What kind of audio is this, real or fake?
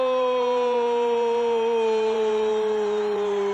fake